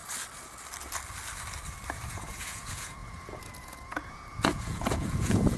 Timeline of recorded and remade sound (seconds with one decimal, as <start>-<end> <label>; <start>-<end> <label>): 0.0-2.1 recorded; 2.1-5.6 remade